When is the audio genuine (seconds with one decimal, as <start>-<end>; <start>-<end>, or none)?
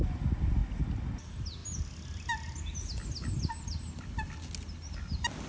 0.0-5.5